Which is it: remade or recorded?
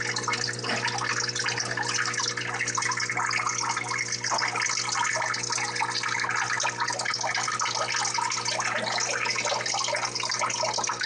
recorded